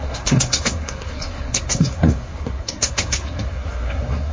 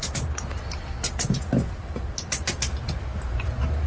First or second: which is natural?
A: second